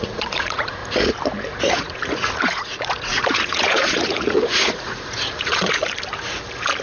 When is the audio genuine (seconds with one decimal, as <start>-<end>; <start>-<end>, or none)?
0.8-1.7; 5.8-6.8